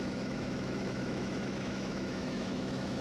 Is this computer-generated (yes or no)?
yes